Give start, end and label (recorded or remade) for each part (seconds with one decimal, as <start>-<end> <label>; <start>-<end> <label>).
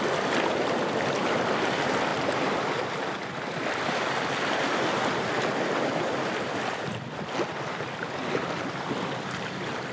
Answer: 0.0-9.9 recorded